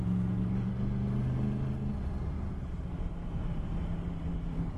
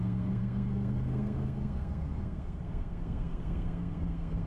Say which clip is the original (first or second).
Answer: first